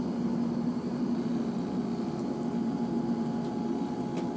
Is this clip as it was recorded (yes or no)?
yes